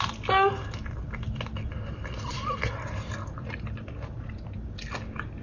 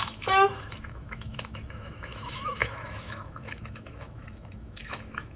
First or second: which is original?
first